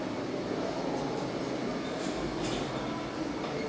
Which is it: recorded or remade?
recorded